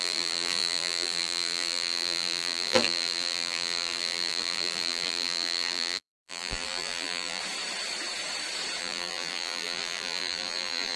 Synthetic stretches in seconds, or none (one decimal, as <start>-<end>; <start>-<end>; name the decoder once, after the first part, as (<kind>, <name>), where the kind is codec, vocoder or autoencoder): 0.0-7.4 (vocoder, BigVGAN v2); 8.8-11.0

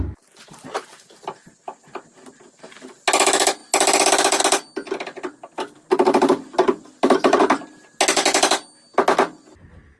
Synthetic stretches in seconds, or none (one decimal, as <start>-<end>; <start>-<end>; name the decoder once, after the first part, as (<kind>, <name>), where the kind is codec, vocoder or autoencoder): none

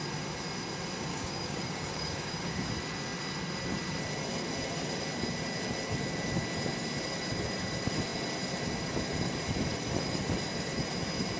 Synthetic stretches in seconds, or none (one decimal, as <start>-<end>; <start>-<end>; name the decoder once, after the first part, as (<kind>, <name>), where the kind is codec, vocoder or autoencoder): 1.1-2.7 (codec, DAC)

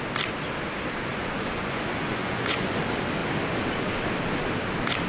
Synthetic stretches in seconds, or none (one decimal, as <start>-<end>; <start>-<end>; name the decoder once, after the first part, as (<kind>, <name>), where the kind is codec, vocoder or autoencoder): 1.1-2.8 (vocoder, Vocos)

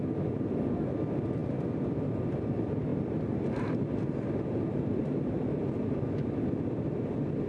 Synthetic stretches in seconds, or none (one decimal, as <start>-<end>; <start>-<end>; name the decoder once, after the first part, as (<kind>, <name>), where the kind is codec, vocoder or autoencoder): 1.4-2.4 (vocoder, BigVGAN v2); 2.9-5.6

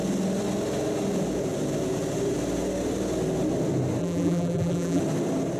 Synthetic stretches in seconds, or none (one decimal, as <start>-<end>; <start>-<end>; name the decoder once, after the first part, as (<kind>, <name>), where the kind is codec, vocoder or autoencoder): 4.0-5.0 (vocoder, BigVGAN v2)